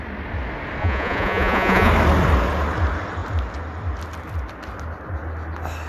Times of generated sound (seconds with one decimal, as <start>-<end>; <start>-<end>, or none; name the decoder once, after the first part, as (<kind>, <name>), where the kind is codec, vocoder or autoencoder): 0.8-1.9 (vocoder, Vocos)